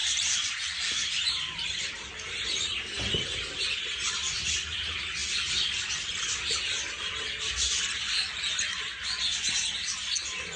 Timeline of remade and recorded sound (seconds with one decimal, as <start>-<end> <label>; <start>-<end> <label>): 0.0-2.8 remade; 2.8-5.2 recorded; 5.2-8.7 remade; 8.7-10.6 recorded